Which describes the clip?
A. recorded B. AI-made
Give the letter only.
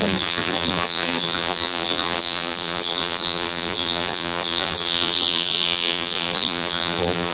B